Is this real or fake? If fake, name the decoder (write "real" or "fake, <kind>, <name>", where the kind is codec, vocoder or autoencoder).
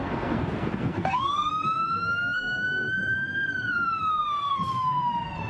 fake, codec, SNAC